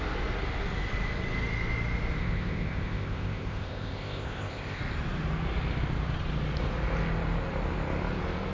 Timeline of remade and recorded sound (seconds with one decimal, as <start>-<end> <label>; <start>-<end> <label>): 0.0-2.2 recorded; 2.2-4.8 remade; 4.8-8.5 recorded